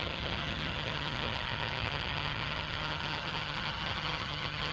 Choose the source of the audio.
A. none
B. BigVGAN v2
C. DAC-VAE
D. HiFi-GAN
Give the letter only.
D